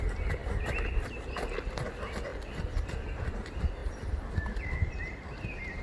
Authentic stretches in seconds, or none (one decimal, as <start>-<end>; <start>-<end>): 0.0-3.8; 5.0-5.8